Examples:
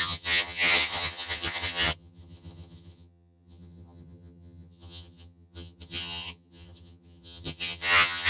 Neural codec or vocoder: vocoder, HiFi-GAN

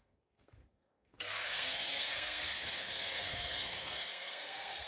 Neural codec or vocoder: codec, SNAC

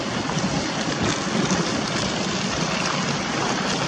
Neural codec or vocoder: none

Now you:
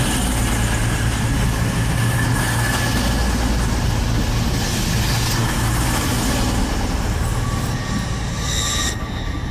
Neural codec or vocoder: none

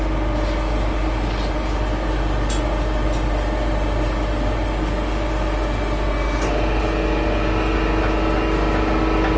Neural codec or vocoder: none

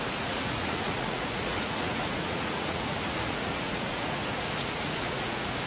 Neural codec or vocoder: vocoder, Vocos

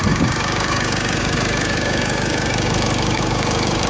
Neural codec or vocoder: codec, DAC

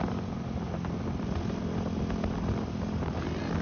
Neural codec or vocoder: none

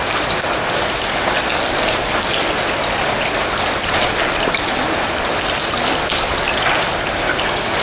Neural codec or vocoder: none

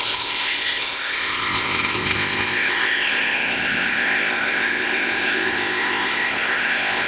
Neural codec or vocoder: codec, ZipCodec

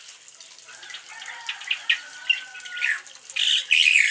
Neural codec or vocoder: none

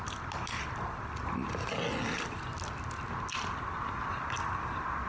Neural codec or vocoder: none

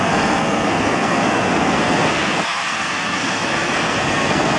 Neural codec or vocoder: codec, SNAC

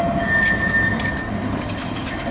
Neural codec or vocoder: none